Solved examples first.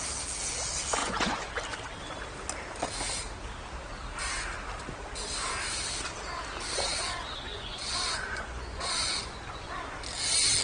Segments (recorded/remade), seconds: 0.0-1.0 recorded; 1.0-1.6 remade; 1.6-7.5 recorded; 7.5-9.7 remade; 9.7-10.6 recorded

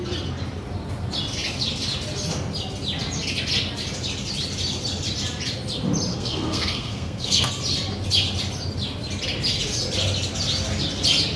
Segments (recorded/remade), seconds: 0.0-6.1 recorded; 6.1-7.5 remade; 7.5-11.4 recorded

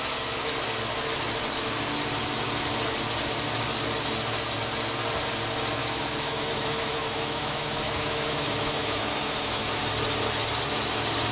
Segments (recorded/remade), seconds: 0.0-5.8 recorded; 5.8-9.8 remade; 9.8-11.3 recorded